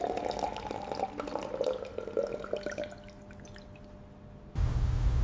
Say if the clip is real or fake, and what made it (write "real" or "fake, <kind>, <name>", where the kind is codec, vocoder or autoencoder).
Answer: real